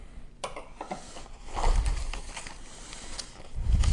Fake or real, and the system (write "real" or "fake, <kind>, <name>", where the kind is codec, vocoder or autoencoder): real